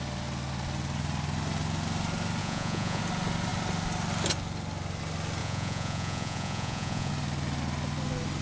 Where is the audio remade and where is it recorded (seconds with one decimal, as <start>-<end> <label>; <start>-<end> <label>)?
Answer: 0.0-2.4 recorded; 2.4-3.0 remade; 3.0-5.4 recorded; 5.4-7.1 remade; 7.1-8.4 recorded